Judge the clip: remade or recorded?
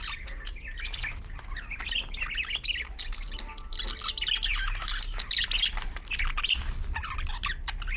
recorded